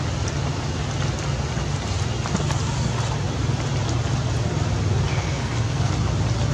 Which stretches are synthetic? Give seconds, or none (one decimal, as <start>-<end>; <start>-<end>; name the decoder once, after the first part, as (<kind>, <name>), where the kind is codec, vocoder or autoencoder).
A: 5.1-5.9 (codec, SNAC)